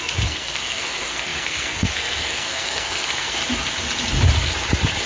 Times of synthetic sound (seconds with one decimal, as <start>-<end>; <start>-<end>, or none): 0.0-3.4